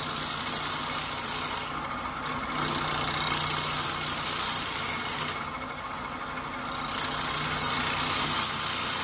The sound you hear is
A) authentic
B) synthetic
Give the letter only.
A